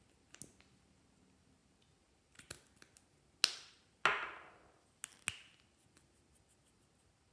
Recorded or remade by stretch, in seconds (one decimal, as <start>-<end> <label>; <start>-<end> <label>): 0.0-7.3 recorded

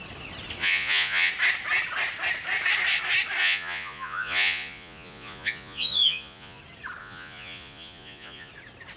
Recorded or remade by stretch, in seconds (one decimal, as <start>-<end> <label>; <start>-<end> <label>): 0.0-0.6 recorded; 0.6-1.3 remade; 1.3-3.4 recorded; 3.4-6.6 remade; 6.6-7.0 recorded; 7.0-8.5 remade; 8.5-9.0 recorded

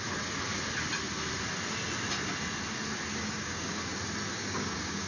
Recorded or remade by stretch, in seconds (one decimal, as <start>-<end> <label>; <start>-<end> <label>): 0.0-3.1 recorded; 3.1-3.8 remade; 3.8-4.3 recorded; 4.3-5.1 remade

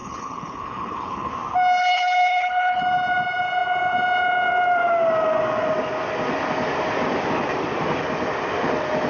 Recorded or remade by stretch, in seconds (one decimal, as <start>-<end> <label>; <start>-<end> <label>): 0.0-1.3 remade; 1.3-1.8 recorded; 1.8-2.8 remade; 2.8-9.1 recorded